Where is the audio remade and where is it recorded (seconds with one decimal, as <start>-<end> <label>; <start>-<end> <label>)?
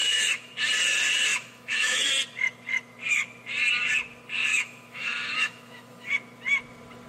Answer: 0.0-0.5 remade; 0.5-1.3 recorded; 1.3-2.1 remade; 2.1-4.5 recorded; 4.5-6.1 remade; 6.1-7.1 recorded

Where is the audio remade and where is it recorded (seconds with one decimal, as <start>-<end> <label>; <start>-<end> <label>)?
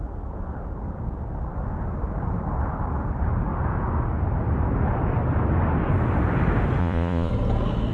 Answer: 0.0-6.8 recorded; 6.8-7.3 remade; 7.3-7.9 recorded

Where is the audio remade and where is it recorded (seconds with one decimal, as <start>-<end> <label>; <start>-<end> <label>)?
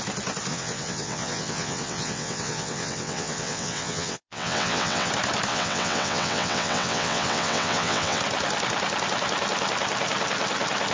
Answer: 0.0-0.5 recorded; 0.5-5.1 remade; 5.1-5.5 recorded; 5.5-8.2 remade; 8.2-10.9 recorded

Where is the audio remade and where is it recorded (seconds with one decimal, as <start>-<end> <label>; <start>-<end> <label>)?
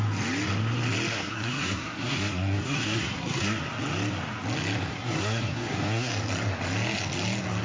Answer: 0.0-1.1 recorded; 1.1-3.6 remade; 3.6-4.9 recorded; 4.9-6.1 remade; 6.1-7.6 recorded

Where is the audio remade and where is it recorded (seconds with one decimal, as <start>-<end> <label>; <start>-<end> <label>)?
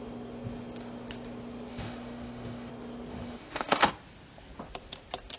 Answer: 0.0-1.7 recorded; 1.7-2.7 remade; 2.7-3.1 recorded; 3.1-3.9 remade; 3.9-5.4 recorded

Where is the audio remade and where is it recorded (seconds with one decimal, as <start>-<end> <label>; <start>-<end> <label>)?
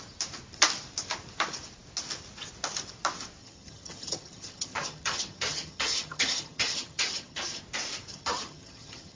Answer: 0.0-3.4 recorded; 3.4-7.6 remade; 7.6-8.1 recorded; 8.1-9.2 remade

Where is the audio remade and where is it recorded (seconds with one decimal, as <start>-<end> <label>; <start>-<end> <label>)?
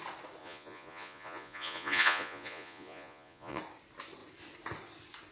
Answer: 0.0-0.4 recorded; 0.4-3.6 remade; 3.6-5.3 recorded